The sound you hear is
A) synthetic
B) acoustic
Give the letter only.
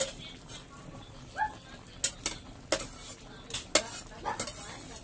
B